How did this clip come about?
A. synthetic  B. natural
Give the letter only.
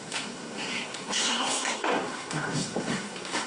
A